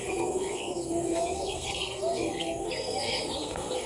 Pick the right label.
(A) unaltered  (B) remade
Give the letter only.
B